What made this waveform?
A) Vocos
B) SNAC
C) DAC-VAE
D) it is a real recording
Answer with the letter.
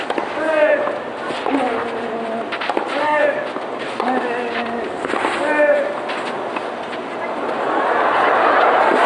D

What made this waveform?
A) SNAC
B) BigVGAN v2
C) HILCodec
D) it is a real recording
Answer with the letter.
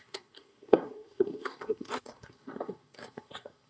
A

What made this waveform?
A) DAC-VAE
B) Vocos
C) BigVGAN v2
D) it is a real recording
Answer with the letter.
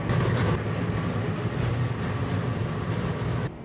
D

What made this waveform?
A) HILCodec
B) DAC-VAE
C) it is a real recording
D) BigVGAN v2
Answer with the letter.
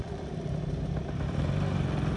D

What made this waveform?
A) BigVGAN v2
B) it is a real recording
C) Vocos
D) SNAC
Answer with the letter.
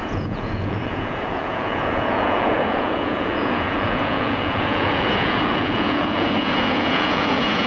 C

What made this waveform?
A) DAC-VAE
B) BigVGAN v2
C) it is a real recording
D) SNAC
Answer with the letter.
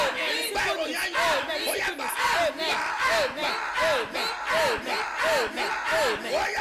C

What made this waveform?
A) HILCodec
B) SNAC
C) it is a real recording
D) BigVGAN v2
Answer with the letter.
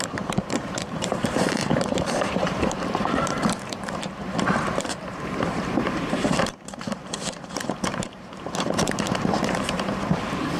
D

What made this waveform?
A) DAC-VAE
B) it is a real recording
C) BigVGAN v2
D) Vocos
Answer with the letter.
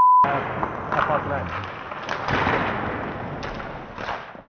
B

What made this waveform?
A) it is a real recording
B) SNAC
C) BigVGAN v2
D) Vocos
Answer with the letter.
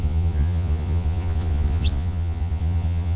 D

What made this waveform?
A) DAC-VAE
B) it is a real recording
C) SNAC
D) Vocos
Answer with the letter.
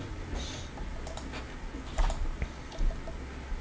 B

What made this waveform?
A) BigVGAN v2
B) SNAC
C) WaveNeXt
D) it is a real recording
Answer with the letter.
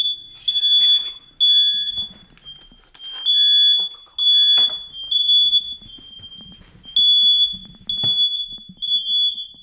D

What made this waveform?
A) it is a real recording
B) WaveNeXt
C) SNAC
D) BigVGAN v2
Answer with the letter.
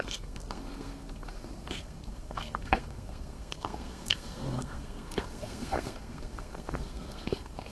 C